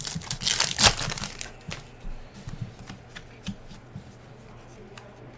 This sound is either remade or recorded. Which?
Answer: recorded